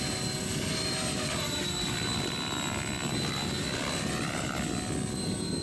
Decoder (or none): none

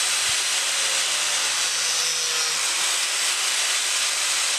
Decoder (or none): none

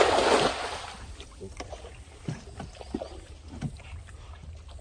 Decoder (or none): none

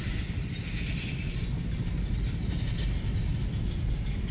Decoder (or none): none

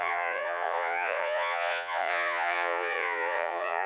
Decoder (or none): vocoder, Vocos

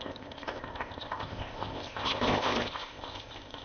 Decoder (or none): codec, ZipCodec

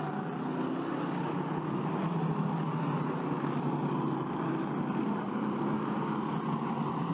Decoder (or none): none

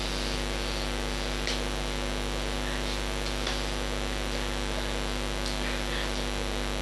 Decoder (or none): none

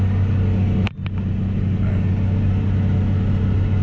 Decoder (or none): none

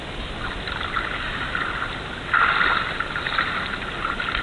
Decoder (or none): none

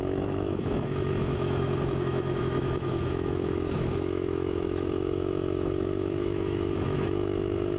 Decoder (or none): autoencoder, DAC-VAE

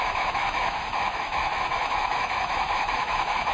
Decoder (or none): autoencoder, DAC-VAE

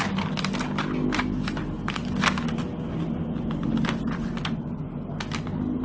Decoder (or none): none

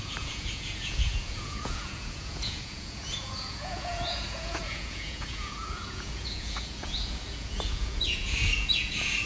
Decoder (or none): vocoder, Vocos